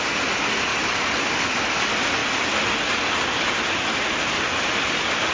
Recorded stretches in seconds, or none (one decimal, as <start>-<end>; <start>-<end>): 0.0-5.3